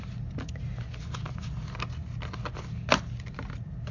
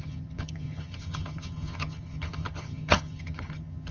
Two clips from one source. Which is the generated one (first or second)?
second